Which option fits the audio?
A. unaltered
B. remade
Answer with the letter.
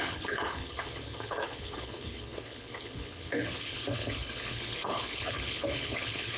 B